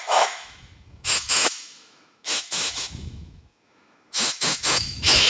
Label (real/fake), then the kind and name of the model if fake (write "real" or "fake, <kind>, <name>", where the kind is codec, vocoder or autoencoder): fake, autoencoder, DAC-VAE